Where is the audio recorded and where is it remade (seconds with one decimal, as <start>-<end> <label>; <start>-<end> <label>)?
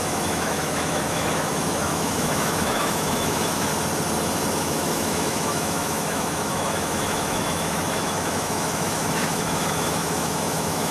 0.0-3.7 remade; 3.7-4.5 recorded; 4.5-10.9 remade